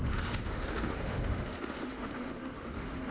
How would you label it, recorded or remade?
remade